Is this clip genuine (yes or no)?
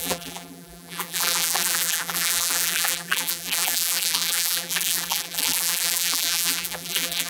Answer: no